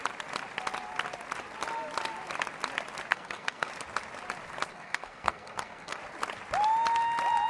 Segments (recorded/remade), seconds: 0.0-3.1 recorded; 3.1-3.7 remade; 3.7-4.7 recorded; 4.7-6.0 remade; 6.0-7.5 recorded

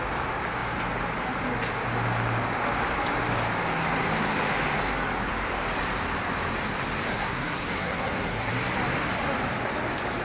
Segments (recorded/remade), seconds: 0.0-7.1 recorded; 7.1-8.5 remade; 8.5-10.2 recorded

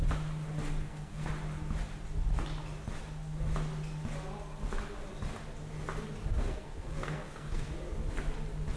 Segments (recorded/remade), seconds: 0.0-0.8 recorded; 0.8-1.3 remade; 1.3-6.3 recorded; 6.3-7.7 remade; 7.7-8.8 recorded

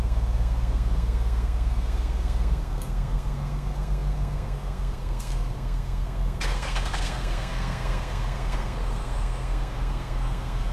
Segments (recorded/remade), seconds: 0.0-10.7 remade

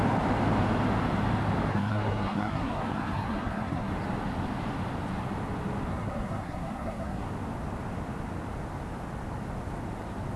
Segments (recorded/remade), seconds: 0.0-1.7 recorded; 1.7-3.9 remade; 3.9-5.9 recorded; 5.9-7.3 remade; 7.3-10.4 recorded

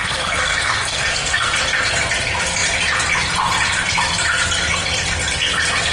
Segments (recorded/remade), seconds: 0.0-1.5 remade; 1.5-5.9 recorded